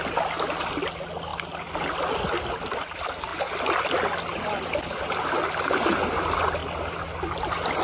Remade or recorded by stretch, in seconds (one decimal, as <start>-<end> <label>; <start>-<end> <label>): 0.0-7.8 recorded